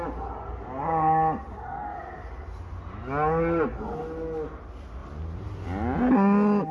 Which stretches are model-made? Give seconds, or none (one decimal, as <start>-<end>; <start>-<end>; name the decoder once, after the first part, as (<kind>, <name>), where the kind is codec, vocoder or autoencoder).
none

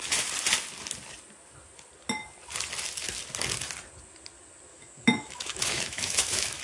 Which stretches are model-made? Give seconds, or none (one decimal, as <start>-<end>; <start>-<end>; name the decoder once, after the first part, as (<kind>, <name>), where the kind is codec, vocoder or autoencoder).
4.7-6.6 (autoencoder, DAC-VAE)

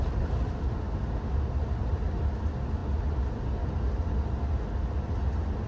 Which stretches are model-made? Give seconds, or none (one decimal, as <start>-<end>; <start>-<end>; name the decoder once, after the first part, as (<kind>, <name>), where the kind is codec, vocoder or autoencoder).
none

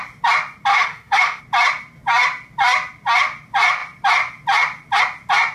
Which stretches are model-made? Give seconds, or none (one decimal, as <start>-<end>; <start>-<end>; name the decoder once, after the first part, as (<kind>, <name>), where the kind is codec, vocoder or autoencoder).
0.7-1.4 (autoencoder, DAC-VAE)

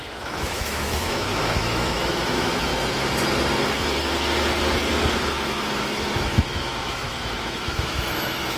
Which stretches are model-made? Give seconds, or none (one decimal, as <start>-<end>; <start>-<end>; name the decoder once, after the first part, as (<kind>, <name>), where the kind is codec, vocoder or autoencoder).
0.0-2.7 (autoencoder, DAC-VAE); 5.3-8.6

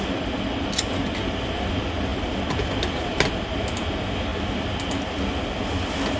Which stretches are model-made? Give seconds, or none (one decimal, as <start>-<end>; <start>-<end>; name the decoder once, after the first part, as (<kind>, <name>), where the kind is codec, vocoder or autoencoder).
none

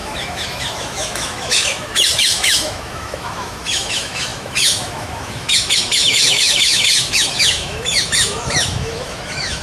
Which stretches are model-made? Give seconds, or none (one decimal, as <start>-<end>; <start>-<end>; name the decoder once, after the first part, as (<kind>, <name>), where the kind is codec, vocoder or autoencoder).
0.0-9.6 (autoencoder, DAC-VAE)

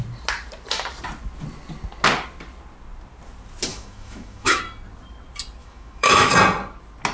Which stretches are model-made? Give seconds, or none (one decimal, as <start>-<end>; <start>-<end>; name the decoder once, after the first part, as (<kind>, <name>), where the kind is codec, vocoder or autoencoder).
3.7-4.6 (autoencoder, DAC-VAE); 5.6-6.3